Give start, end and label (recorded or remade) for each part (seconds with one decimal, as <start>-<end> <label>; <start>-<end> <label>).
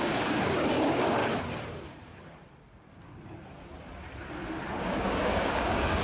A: 0.0-1.2 remade; 1.2-4.8 recorded; 4.8-6.0 remade